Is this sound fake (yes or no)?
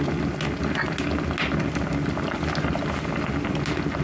no